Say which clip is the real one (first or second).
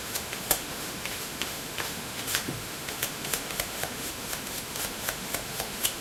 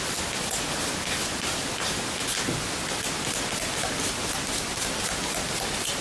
second